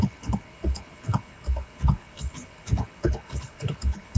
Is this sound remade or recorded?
remade